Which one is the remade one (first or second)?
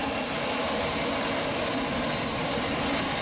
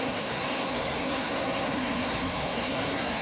second